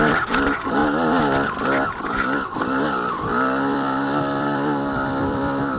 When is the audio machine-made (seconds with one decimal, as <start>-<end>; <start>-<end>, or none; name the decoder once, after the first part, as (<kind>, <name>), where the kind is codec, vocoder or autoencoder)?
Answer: 0.0-0.8 (vocoder, BigVGAN v2); 1.5-5.8